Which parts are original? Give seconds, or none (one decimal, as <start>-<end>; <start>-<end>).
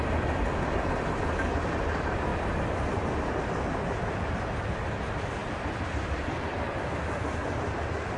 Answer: 0.0-5.4